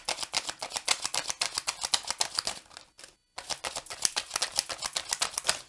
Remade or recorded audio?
recorded